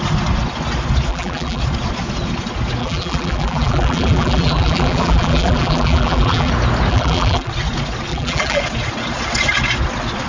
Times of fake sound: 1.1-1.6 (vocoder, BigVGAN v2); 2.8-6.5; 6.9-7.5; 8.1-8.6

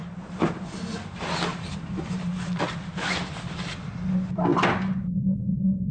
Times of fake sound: 1.5-2.5 (vocoder, BigVGAN v2)

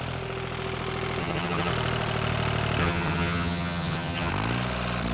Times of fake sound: 1.2-1.7 (vocoder, HiFi-GAN); 2.8-4.3

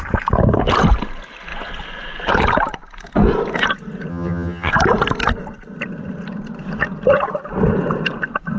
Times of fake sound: 4.1-4.7 (vocoder, HiFi-GAN)